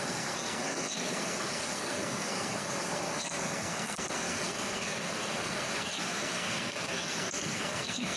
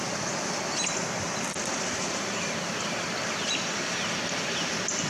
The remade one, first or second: first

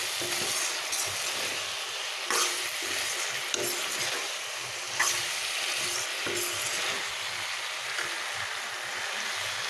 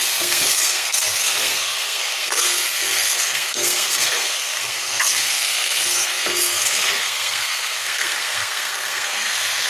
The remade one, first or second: second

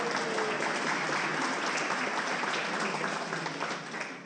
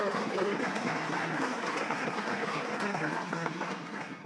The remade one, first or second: second